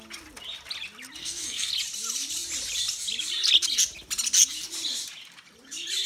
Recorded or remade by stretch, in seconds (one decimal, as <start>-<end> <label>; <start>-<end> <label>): 0.0-1.2 recorded; 1.2-1.7 remade; 1.7-6.1 recorded